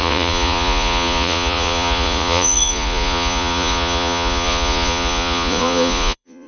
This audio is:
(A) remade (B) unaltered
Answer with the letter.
A